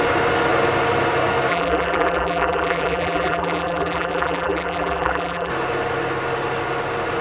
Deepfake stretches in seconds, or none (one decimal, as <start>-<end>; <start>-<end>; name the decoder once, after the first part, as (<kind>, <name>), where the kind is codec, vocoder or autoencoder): 1.5-5.5 (vocoder, BigVGAN v2)